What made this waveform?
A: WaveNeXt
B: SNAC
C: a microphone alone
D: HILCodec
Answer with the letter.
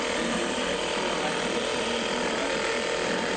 C